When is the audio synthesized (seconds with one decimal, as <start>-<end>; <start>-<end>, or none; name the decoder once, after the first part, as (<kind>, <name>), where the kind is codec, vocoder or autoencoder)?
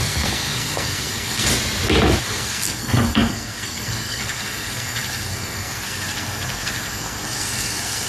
0.0-1.5 (codec, SNAC); 2.2-8.1